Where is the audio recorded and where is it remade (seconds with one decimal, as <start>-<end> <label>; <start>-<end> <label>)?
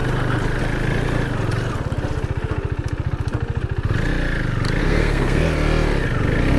0.0-4.8 recorded; 4.8-5.4 remade; 5.4-6.6 recorded